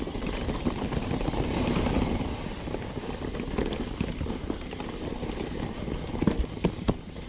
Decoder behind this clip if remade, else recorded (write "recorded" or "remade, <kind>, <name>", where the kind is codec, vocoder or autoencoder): recorded